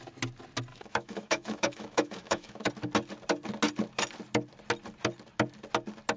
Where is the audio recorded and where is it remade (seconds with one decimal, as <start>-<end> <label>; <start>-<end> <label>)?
0.0-0.7 recorded; 0.7-2.7 remade; 2.7-6.2 recorded